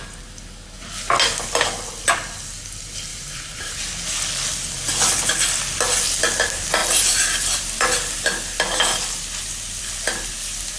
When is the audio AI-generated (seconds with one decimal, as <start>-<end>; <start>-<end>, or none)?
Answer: 3.1-3.8